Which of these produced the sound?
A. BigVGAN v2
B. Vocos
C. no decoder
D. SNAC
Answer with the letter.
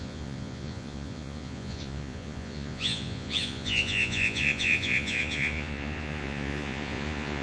B